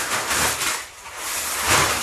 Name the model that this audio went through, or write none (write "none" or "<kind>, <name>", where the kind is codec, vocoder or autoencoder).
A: none